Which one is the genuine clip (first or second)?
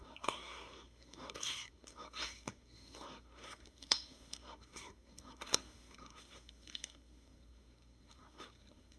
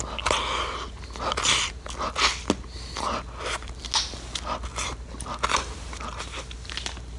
second